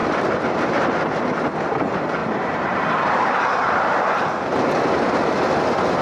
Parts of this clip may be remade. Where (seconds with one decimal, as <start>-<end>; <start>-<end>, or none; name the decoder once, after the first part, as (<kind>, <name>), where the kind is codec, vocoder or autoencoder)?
0.0-1.0 (vocoder, BigVGAN v2); 2.2-4.0